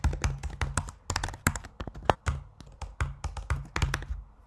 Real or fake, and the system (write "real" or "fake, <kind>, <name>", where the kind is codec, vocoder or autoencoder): real